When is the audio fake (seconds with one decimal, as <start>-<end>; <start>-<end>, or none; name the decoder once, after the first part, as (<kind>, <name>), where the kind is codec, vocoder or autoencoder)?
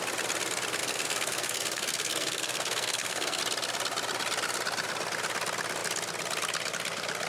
0.8-3.4 (codec, SNAC)